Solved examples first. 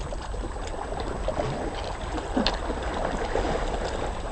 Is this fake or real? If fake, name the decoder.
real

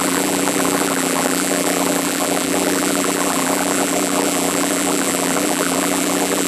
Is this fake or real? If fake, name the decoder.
fake, vocoder, BigVGAN v2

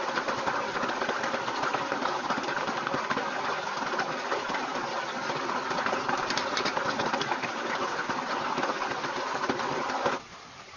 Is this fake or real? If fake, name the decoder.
real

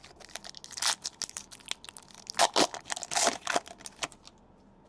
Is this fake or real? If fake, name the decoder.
real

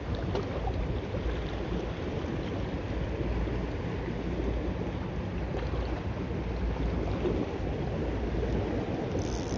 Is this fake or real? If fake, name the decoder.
real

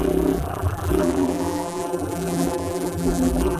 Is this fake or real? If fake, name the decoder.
fake, vocoder, BigVGAN v2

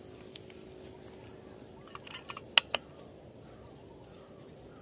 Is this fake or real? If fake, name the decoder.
real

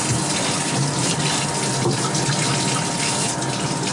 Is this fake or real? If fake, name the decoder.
real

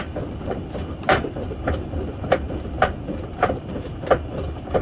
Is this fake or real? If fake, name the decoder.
real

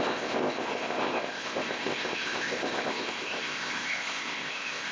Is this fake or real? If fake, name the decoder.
fake, codec, ZipCodec